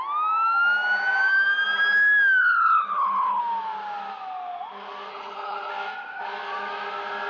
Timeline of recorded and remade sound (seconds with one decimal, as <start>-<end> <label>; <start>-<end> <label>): 0.0-2.4 recorded; 2.4-3.4 remade; 3.4-5.1 recorded; 5.1-5.7 remade; 5.7-7.3 recorded